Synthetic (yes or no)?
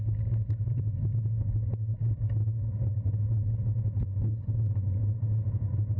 no